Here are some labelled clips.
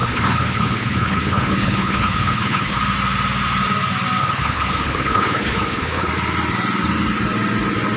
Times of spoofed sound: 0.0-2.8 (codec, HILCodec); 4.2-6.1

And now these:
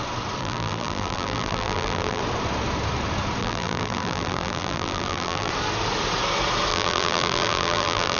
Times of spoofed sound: 0.4-2.2 (vocoder, BigVGAN v2); 3.4-5.5; 6.7-8.2

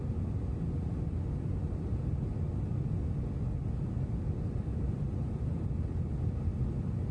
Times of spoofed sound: 4.7-5.6 (vocoder, BigVGAN v2)